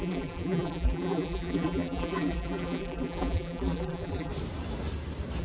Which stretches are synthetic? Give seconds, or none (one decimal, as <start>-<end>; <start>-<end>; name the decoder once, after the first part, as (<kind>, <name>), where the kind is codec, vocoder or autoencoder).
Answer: 0.0-4.3 (vocoder, BigVGAN v2)